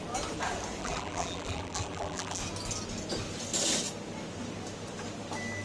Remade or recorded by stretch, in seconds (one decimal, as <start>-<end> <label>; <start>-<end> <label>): 0.0-0.8 recorded; 0.8-2.4 remade; 2.4-5.6 recorded